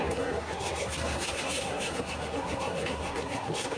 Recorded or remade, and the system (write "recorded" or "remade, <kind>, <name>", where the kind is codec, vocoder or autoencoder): remade, codec, SNAC